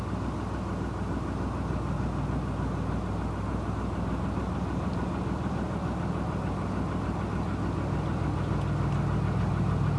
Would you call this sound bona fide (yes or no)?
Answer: yes